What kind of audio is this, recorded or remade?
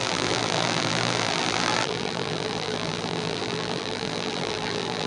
remade